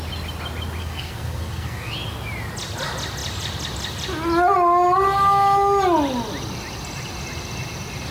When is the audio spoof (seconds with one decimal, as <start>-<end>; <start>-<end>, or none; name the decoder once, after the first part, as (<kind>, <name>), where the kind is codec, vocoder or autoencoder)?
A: 0.8-1.9 (codec, SNAC)